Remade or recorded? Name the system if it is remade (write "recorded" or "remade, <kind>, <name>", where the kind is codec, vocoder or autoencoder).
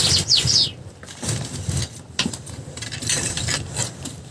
recorded